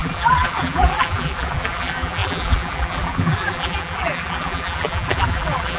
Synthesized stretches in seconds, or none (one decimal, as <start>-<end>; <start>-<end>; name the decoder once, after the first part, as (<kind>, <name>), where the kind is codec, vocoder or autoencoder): 0.0-5.8 (vocoder, BigVGAN v2)